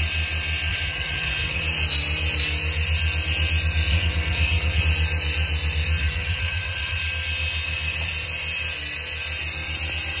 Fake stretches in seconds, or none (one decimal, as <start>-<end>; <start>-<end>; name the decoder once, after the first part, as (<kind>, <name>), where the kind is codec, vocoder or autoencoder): 0.7-1.6 (vocoder, WaveNeXt); 3.9-4.8; 6.0-7.0